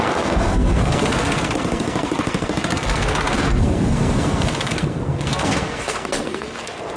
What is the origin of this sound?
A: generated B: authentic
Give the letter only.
A